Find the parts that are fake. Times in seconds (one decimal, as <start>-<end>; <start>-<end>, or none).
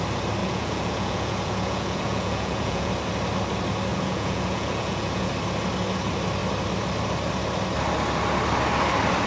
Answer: 0.4-2.9; 3.9-5.3